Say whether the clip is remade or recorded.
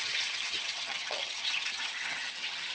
remade